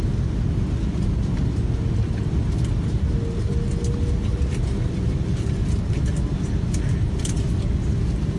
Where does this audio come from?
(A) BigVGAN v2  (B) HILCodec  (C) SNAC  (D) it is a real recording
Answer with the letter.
D